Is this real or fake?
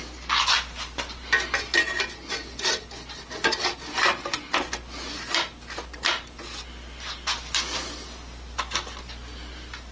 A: real